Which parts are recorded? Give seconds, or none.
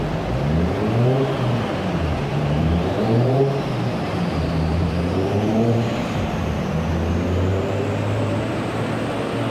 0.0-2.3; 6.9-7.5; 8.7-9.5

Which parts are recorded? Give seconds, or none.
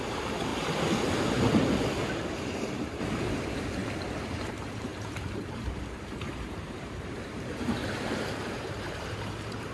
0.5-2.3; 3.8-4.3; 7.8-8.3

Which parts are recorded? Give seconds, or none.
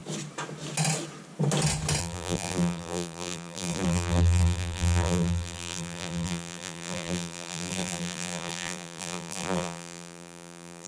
0.0-2.0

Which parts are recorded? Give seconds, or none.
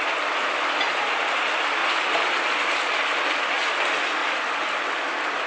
0.0-5.5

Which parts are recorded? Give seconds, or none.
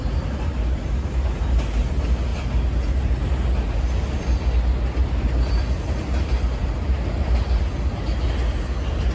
0.0-9.1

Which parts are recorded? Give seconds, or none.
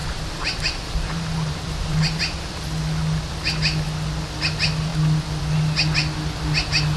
2.5-7.0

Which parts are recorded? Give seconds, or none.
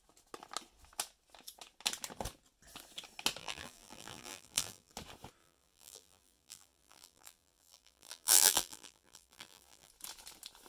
0.0-3.4; 4.9-5.4; 9.9-10.7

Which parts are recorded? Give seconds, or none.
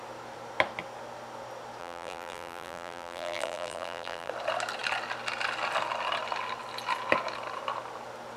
0.0-1.8; 4.3-8.4